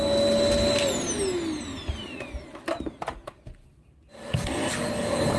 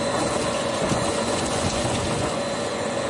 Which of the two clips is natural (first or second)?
first